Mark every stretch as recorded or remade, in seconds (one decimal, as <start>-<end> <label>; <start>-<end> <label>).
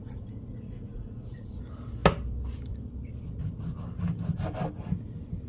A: 0.0-1.6 remade; 1.6-5.5 recorded